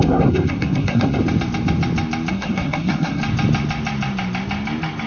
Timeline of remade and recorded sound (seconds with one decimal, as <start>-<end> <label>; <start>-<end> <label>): 0.0-1.2 remade; 1.2-2.3 recorded; 2.3-3.2 remade; 3.2-5.1 recorded